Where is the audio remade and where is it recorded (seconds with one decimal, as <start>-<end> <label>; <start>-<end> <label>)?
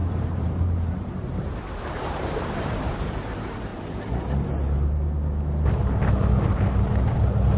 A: 0.0-3.7 remade; 3.7-6.5 recorded; 6.5-7.6 remade